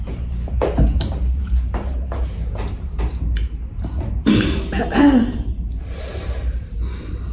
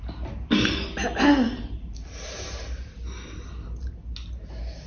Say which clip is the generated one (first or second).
first